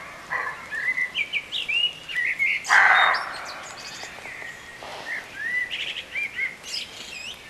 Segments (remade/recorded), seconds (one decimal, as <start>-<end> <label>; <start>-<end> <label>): 0.0-4.9 recorded; 4.9-6.6 remade; 6.6-7.5 recorded